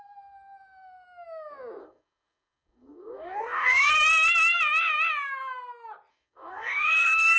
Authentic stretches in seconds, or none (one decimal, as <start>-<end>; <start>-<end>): 0.0-1.8; 3.9-6.1